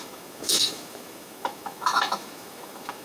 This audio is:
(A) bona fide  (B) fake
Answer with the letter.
B